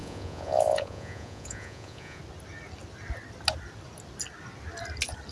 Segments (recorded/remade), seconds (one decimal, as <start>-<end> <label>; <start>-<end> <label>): 0.0-2.2 remade; 2.2-5.3 recorded

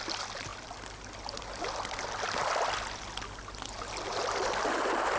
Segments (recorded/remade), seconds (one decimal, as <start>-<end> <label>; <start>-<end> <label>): 0.0-5.2 recorded

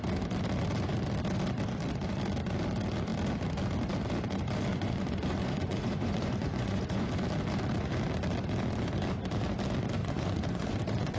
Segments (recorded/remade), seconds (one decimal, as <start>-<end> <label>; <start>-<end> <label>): 0.0-4.7 recorded; 4.7-7.1 remade; 7.1-10.0 recorded; 10.0-11.2 remade

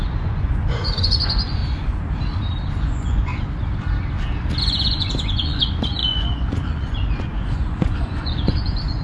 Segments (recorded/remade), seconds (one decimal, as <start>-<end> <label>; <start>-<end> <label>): 0.0-1.6 remade; 1.6-2.8 recorded; 2.8-3.3 remade; 3.3-4.6 recorded; 4.6-9.0 remade

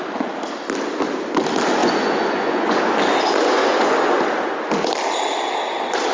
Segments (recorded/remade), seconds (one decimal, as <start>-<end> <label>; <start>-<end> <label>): 0.0-1.8 recorded; 1.8-2.8 remade; 2.8-3.6 recorded; 3.6-4.2 remade; 4.2-6.1 recorded

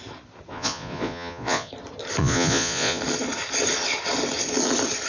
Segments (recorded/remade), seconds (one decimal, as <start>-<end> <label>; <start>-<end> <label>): 0.0-0.5 recorded; 0.5-1.7 remade; 1.7-2.2 recorded; 2.2-3.0 remade; 3.0-5.1 recorded